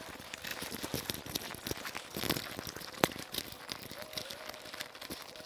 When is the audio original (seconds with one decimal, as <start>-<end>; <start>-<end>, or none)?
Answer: 0.0-0.5; 1.1-5.5